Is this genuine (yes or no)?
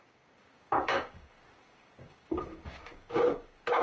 no